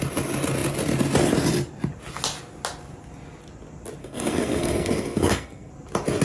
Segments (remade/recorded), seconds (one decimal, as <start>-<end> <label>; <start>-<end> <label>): 0.0-4.0 recorded; 4.0-5.7 remade; 5.7-6.2 recorded